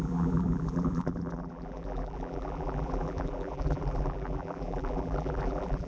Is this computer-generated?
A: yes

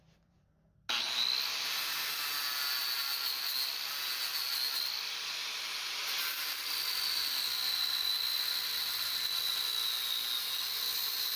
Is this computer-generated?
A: no